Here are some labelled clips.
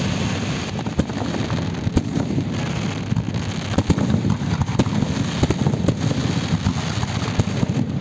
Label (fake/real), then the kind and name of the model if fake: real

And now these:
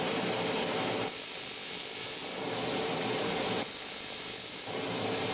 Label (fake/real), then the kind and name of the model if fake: fake, vocoder, BigVGAN v2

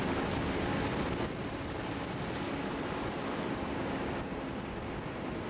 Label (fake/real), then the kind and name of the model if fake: real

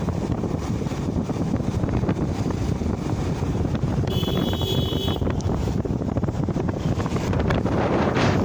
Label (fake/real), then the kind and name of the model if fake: fake, vocoder, BigVGAN v2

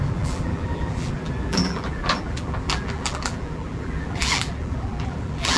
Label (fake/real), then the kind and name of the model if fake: fake, vocoder, BigVGAN v2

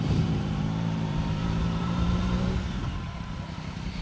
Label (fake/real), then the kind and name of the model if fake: fake, vocoder, BigVGAN v2